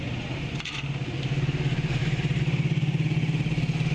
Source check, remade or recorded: recorded